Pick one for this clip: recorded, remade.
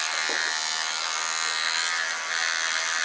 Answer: recorded